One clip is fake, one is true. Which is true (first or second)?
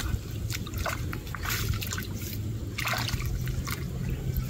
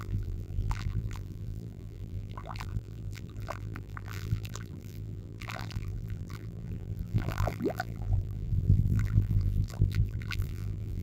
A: first